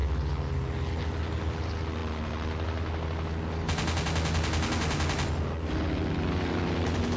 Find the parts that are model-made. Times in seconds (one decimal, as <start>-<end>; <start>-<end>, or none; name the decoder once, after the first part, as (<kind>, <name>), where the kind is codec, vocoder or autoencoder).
none